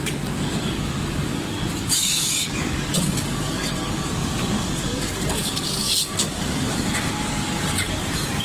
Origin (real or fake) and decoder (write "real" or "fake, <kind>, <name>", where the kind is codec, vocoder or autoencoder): fake, codec, DAC